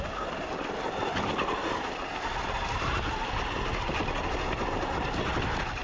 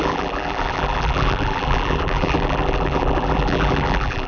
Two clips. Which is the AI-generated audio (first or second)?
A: second